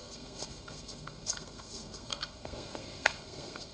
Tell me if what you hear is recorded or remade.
remade